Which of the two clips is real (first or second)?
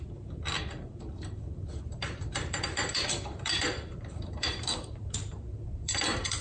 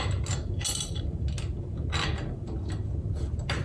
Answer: second